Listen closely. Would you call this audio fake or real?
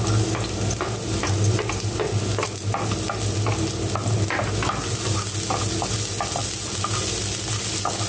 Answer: real